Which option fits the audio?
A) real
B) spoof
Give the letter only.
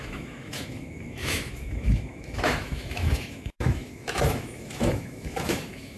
B